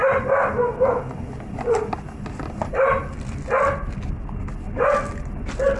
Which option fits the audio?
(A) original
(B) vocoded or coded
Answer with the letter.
A